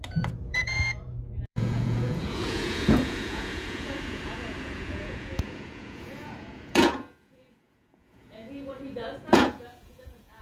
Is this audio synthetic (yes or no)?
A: yes